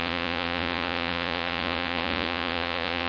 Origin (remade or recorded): remade